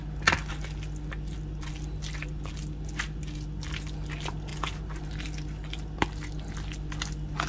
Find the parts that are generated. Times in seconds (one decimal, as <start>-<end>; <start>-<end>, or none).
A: none